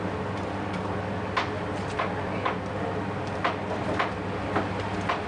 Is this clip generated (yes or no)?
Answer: no